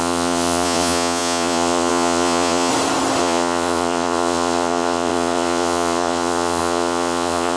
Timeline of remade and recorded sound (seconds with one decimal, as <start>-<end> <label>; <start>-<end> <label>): 0.0-2.7 remade; 2.7-3.2 recorded; 3.2-7.6 remade